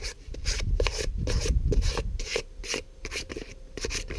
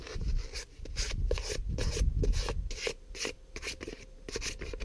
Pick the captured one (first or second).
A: second